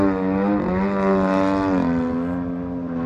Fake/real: real